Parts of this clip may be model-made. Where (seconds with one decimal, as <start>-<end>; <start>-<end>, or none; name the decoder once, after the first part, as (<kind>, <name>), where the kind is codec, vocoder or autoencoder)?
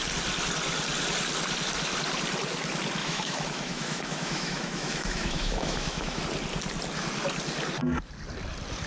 3.0-6.2 (autoencoder, DAC-VAE)